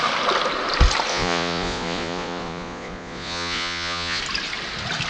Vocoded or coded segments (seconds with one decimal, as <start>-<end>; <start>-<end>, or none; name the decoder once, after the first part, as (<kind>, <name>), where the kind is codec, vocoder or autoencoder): 1.1-4.2 (vocoder, Vocos)